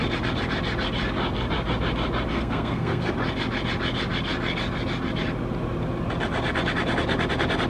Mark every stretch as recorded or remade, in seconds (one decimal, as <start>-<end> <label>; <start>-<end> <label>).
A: 0.0-2.3 recorded; 2.3-3.1 remade; 3.1-7.7 recorded